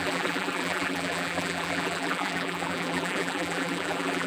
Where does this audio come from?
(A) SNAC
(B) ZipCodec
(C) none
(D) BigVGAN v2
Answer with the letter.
D